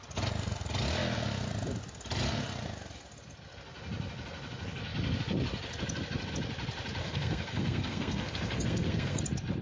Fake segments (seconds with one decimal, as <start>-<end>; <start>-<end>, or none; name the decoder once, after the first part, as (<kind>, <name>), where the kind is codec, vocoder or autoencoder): 7.0-9.2 (codec, SNAC)